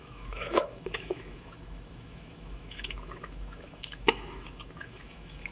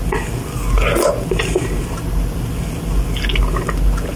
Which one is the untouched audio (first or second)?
second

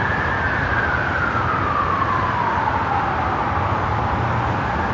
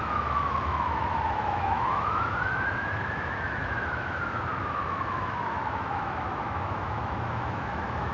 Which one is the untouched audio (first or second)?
first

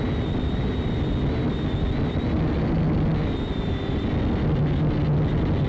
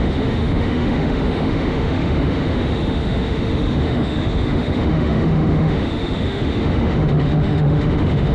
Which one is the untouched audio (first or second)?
first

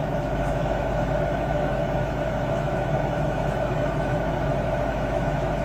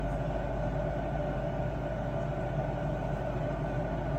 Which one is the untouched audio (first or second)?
second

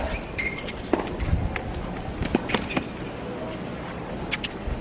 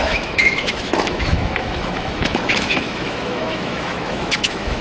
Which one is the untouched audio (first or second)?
first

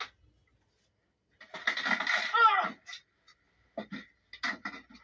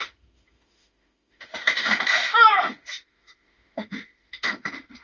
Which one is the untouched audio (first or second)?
first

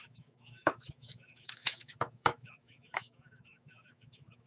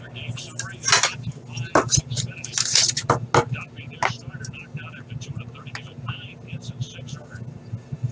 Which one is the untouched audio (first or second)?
second